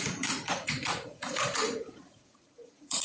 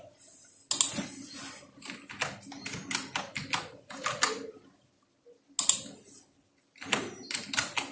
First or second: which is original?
second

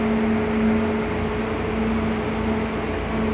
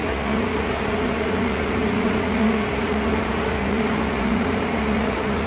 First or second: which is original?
first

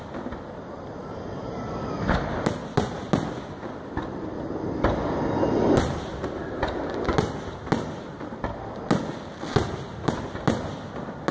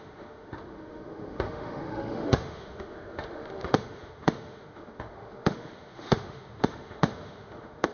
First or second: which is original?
first